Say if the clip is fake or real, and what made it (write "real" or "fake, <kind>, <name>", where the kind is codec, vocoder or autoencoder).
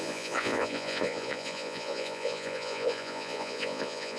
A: fake, vocoder, Vocos